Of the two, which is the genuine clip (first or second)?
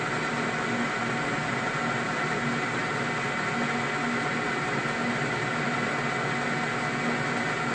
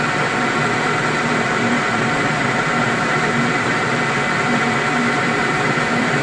first